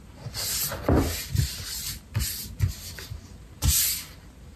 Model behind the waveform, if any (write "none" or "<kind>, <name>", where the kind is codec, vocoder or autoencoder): none